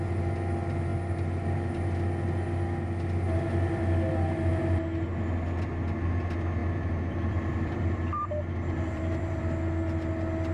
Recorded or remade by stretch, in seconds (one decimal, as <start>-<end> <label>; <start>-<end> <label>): 0.0-6.6 recorded; 6.6-9.4 remade; 9.4-10.5 recorded